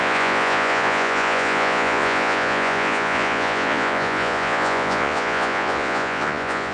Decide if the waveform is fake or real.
fake